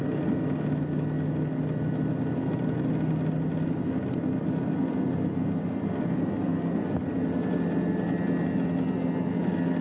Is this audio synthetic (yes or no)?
no